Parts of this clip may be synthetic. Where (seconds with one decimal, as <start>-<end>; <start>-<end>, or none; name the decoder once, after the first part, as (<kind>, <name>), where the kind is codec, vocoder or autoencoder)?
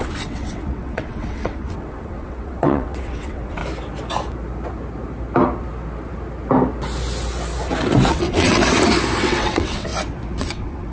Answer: 0.0-3.6 (vocoder, WaveNeXt); 8.1-8.6; 9.2-9.9; 10.4-10.9